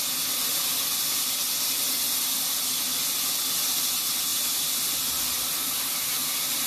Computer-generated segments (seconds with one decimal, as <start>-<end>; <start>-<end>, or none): none